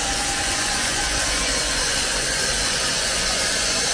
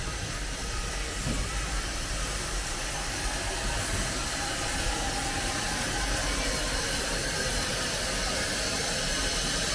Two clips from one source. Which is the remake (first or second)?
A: first